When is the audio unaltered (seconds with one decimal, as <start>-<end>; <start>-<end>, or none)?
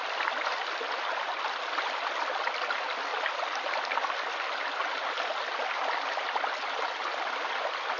0.0-8.0